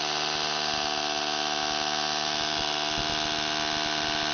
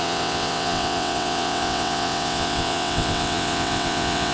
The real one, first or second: first